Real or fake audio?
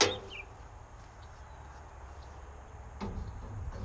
real